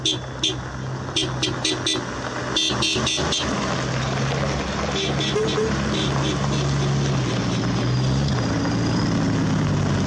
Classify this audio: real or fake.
real